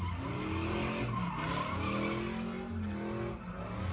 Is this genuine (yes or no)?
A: yes